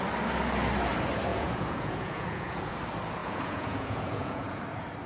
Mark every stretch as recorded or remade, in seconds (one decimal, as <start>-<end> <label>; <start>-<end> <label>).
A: 0.0-1.3 recorded; 1.3-2.7 remade; 2.7-3.2 recorded; 3.2-4.6 remade; 4.6-5.1 recorded